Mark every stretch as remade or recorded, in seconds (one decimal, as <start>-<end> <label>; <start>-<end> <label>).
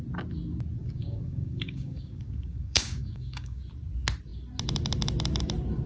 0.0-0.8 recorded; 0.8-3.6 remade; 3.6-5.9 recorded